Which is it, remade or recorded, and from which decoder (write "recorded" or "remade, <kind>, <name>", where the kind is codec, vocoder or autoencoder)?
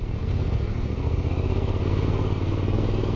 remade, codec, SNAC